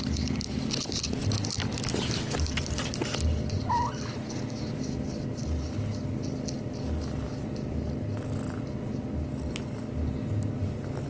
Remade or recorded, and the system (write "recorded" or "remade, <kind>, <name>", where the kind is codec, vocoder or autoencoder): recorded